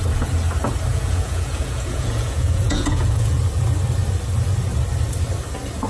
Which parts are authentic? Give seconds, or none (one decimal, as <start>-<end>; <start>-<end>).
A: 0.0-0.9; 3.4-5.9

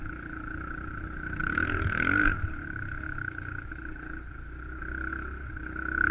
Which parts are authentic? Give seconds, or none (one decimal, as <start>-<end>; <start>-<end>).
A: 0.0-6.1

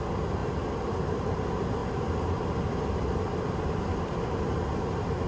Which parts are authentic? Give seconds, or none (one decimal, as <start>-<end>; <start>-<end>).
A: 0.0-5.3

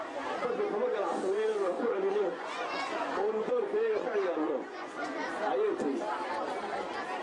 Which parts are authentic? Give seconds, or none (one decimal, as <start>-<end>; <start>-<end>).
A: 0.0-1.1; 5.4-7.2

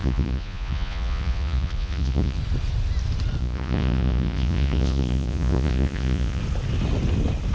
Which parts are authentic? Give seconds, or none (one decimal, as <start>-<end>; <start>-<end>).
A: 2.4-3.4; 6.4-7.5

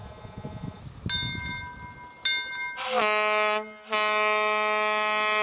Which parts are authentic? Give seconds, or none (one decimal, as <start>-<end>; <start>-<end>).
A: 0.8-5.4

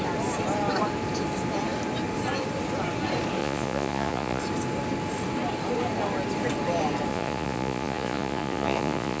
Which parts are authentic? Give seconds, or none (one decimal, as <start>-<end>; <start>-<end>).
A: 0.0-3.4; 4.4-7.1